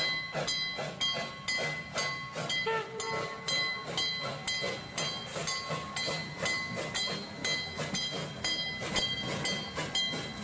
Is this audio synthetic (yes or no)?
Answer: no